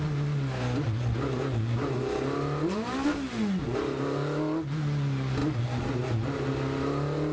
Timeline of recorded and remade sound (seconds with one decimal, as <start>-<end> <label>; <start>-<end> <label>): 0.0-7.3 recorded